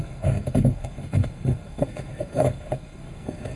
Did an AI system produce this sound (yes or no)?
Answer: yes